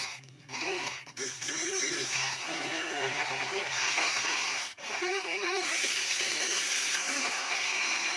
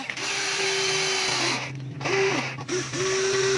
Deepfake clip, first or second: first